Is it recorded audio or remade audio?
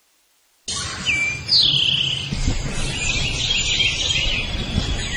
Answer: recorded